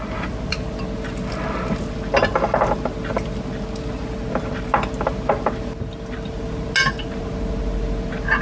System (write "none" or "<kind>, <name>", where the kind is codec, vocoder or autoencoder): none